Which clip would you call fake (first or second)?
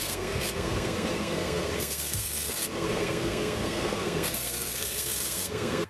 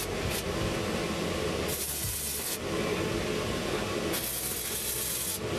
first